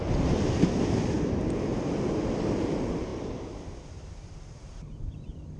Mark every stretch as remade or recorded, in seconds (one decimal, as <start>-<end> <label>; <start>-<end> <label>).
0.0-5.6 recorded